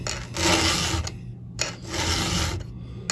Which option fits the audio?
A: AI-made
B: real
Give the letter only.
B